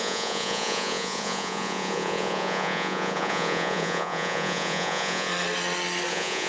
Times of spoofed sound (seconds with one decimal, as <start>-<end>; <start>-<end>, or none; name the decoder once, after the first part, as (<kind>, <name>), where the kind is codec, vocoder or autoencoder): 0.0-5.3 (vocoder, Vocos); 6.1-6.5